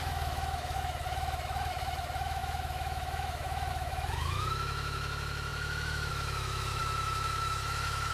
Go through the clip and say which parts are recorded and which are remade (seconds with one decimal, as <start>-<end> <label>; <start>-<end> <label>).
0.0-8.1 remade